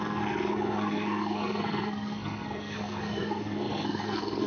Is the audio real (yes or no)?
no